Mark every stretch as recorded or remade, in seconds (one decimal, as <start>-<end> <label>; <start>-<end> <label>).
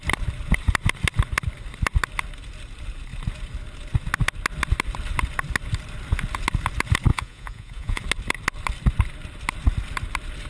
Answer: 0.0-7.1 recorded; 7.1-8.0 remade; 8.0-10.5 recorded